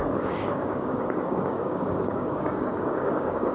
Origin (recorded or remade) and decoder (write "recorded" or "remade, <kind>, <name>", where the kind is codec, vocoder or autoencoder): remade, codec, DAC